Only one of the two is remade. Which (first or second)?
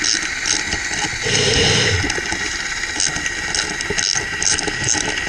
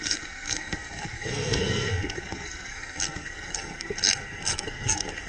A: second